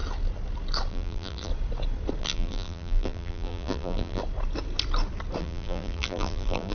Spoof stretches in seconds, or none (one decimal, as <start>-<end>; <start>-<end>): 0.9-1.5; 2.2-4.2; 5.4-6.7